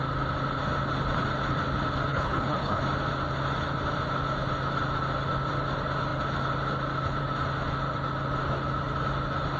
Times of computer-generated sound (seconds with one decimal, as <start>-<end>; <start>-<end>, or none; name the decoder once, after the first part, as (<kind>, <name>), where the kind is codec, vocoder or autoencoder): 2.1-2.8 (codec, HILCodec)